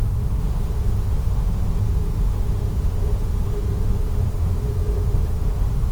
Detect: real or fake fake